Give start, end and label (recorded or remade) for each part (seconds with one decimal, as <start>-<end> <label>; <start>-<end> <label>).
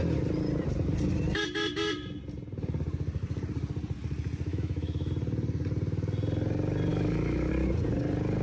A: 0.0-4.5 recorded; 4.5-5.1 remade; 5.1-6.9 recorded; 6.9-7.5 remade; 7.5-8.4 recorded